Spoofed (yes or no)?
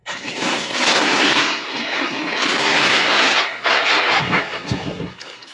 yes